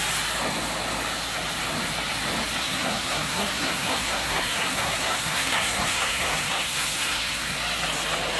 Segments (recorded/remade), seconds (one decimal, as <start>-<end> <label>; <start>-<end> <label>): 0.0-2.6 recorded; 2.6-7.6 remade; 7.6-8.4 recorded